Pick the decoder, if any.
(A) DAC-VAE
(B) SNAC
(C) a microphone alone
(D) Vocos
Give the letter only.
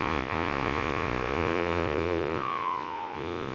D